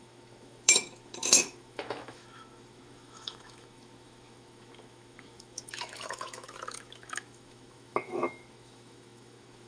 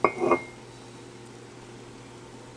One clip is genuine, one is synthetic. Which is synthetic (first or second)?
first